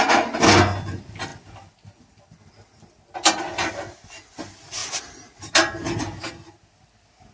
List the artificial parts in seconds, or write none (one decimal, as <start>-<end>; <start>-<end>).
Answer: none